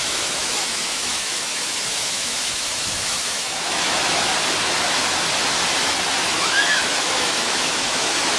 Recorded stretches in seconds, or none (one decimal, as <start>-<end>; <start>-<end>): 4.3-6.2